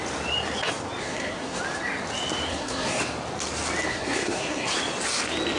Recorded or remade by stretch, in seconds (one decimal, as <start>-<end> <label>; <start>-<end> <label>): 0.0-1.0 recorded; 1.0-1.6 remade; 1.6-2.5 recorded; 2.5-3.0 remade; 3.0-3.9 recorded; 3.9-4.7 remade; 4.7-5.6 recorded